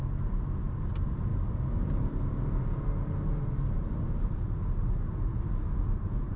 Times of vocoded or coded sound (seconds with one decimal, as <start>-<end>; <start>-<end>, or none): none